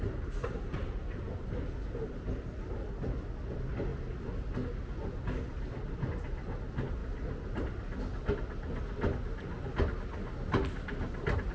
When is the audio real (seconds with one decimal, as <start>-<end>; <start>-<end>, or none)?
0.0-11.5